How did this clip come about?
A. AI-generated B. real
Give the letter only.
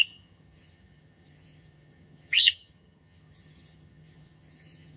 A